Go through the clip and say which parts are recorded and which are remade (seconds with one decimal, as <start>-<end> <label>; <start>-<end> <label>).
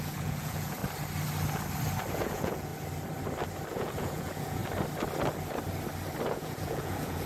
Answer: 0.0-0.8 remade; 0.8-2.1 recorded; 2.1-2.7 remade; 2.7-3.7 recorded; 3.7-4.6 remade; 4.6-6.3 recorded; 6.3-7.3 remade